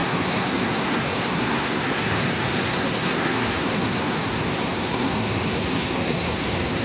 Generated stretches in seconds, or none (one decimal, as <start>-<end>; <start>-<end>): 0.0-6.8